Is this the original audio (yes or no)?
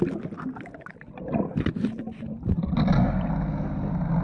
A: yes